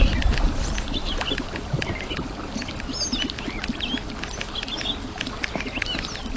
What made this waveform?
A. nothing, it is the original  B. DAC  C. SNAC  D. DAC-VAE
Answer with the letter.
A